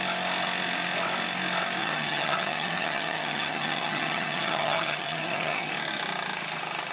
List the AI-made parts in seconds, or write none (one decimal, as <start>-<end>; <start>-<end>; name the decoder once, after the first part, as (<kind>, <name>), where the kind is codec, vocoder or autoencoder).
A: 1.8-5.7 (vocoder, HiFi-GAN)